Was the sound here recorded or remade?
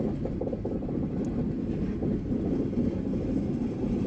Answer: recorded